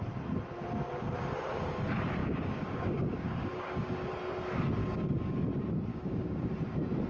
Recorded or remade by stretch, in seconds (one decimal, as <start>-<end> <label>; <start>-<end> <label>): 0.0-2.2 recorded; 2.2-4.1 remade; 4.1-4.8 recorded; 4.8-5.4 remade; 5.4-5.9 recorded; 5.9-6.5 remade; 6.5-7.1 recorded